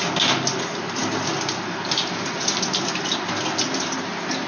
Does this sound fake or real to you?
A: real